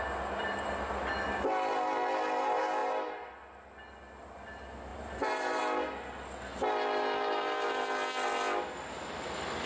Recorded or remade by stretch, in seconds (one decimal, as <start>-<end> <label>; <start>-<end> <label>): 0.0-4.9 recorded; 4.9-5.6 remade; 5.6-9.7 recorded